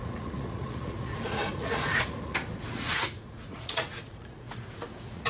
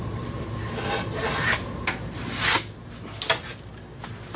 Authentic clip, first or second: second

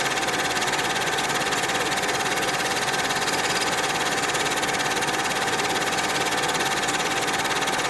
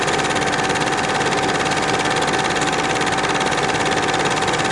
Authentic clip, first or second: second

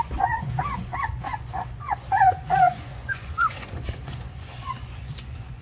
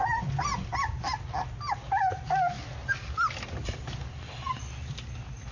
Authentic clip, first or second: second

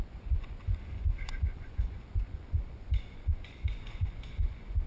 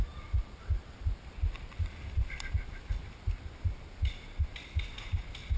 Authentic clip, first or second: second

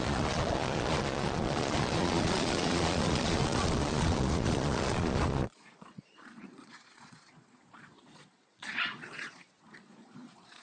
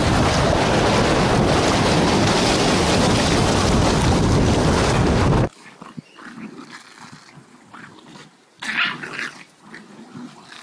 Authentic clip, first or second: second